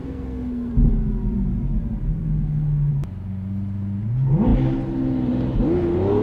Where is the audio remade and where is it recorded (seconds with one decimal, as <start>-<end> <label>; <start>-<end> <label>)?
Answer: 0.0-0.7 remade; 0.7-2.2 recorded; 2.2-2.9 remade; 2.9-6.2 recorded